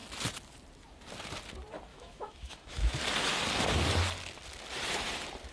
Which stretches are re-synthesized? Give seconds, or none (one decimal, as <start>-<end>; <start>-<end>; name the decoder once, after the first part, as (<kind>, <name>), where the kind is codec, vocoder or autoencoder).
1.9-2.9 (autoencoder, DAC-VAE)